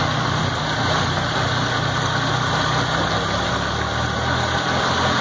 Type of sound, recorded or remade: recorded